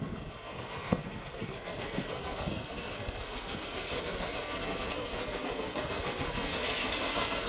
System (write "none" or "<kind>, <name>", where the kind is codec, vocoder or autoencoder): codec, SNAC